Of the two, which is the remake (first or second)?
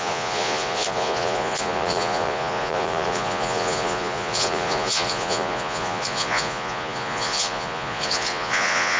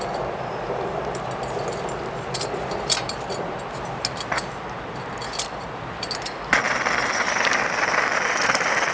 first